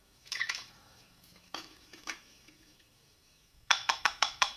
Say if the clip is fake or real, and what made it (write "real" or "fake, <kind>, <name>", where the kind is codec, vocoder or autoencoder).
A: fake, autoencoder, DAC-VAE